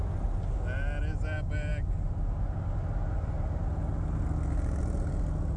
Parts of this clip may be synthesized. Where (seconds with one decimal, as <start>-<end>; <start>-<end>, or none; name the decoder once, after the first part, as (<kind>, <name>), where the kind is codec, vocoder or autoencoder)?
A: none